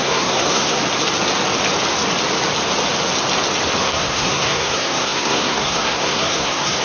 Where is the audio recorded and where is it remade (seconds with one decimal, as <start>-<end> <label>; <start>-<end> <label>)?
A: 0.0-0.8 remade; 0.8-3.8 recorded; 3.8-6.8 remade